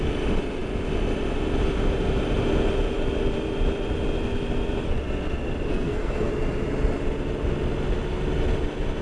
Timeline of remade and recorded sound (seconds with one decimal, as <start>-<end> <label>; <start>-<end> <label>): 0.0-5.7 recorded; 5.7-6.3 remade; 6.3-9.0 recorded